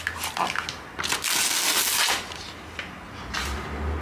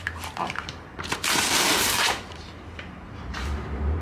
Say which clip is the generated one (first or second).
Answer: second